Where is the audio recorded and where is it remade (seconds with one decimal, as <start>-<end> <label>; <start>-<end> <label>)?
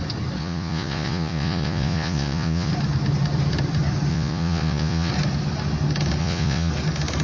0.0-0.4 recorded; 0.4-2.7 remade; 2.7-4.1 recorded; 4.1-5.1 remade; 5.1-6.2 recorded; 6.2-6.7 remade; 6.7-7.2 recorded